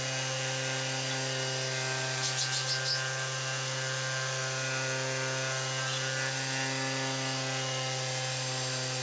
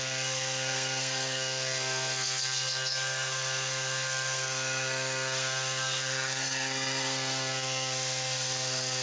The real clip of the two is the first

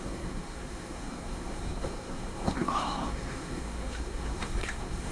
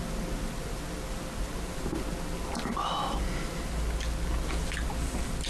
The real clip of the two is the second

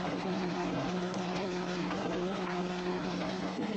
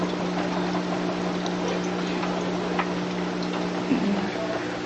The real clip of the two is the second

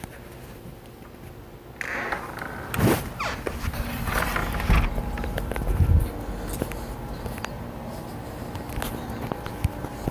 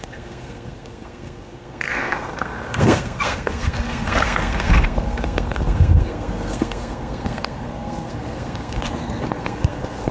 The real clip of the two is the first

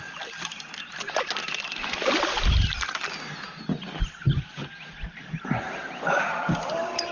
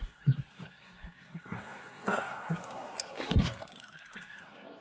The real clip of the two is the first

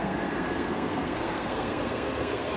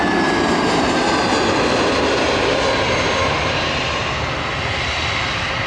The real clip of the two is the second